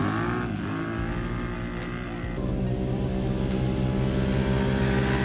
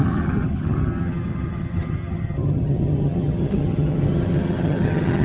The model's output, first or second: second